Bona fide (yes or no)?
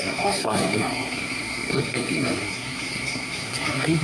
no